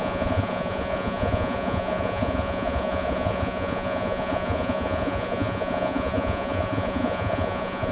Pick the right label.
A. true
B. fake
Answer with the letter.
B